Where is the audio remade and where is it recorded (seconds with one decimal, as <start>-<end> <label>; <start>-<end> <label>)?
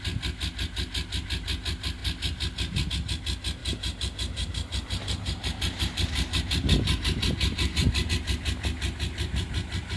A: 0.0-3.6 recorded; 3.6-8.1 remade; 8.1-10.0 recorded